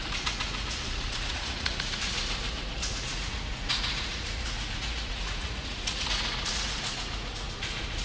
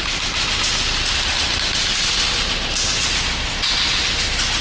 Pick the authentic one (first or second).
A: second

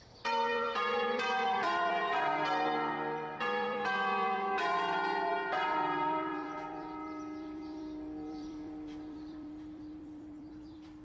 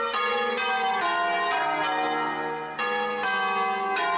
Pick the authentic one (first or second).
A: second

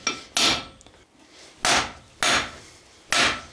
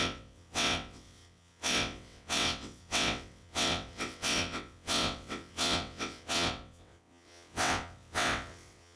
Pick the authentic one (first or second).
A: first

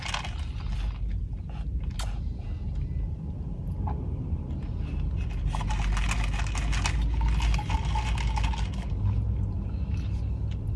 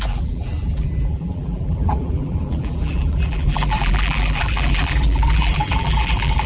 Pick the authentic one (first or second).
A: first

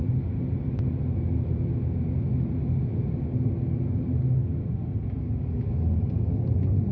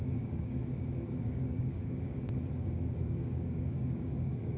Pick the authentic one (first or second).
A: first